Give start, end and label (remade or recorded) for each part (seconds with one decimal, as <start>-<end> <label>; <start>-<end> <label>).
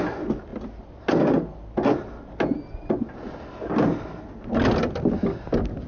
0.0-5.9 recorded